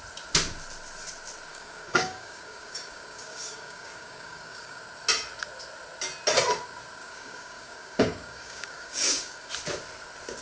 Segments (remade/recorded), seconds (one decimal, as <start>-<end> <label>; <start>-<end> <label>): 0.0-1.5 recorded; 1.5-4.8 remade; 4.8-7.0 recorded; 7.0-9.5 remade; 9.5-10.4 recorded